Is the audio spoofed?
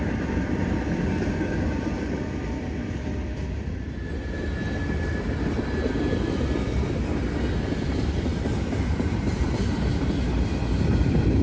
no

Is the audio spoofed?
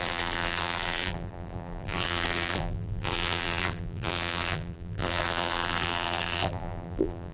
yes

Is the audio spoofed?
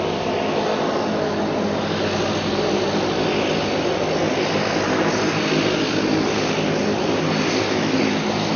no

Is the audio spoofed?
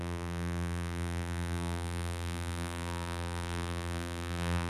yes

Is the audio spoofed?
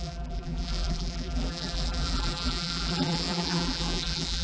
yes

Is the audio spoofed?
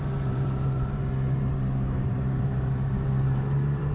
yes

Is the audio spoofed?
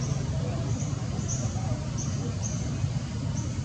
no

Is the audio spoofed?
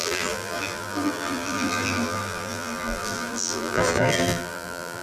yes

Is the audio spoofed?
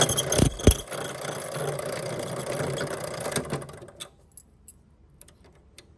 no